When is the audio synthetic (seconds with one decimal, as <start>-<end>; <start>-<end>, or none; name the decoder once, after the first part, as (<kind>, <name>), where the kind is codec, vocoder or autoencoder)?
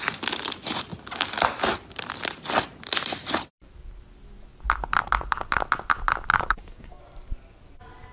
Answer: 6.3-7.0 (codec, DAC)